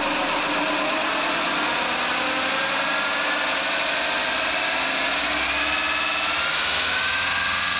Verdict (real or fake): real